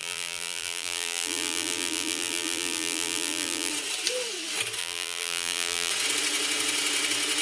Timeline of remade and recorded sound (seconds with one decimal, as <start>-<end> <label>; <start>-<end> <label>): 0.0-3.7 remade; 3.7-4.8 recorded; 4.8-5.9 remade; 5.9-7.4 recorded